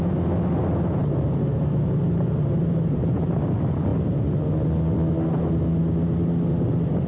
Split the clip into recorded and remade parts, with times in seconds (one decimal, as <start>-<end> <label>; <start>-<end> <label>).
0.0-1.0 recorded; 1.0-3.3 remade; 3.3-7.1 recorded